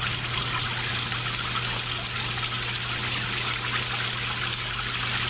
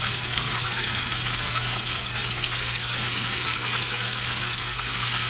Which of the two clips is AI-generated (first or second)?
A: second